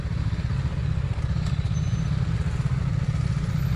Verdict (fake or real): real